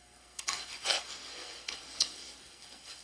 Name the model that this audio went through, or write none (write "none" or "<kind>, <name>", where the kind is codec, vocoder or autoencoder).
codec, SNAC